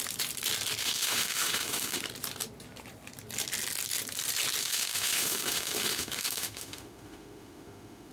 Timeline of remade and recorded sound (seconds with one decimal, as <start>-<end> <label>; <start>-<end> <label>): 0.0-0.8 recorded; 0.8-2.0 remade; 2.0-4.6 recorded; 4.6-8.1 remade